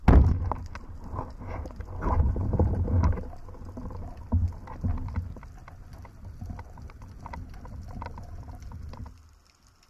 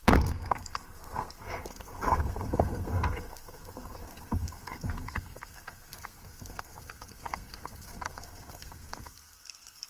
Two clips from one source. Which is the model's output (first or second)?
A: second